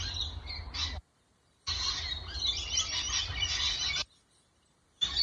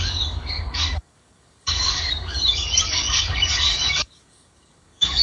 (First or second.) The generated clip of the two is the second